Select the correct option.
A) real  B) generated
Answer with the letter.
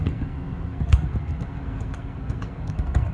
B